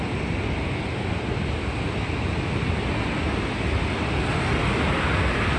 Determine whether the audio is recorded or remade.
recorded